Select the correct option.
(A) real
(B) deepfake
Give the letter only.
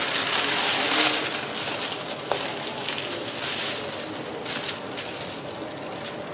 A